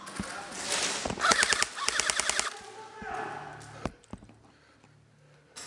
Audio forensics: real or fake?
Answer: real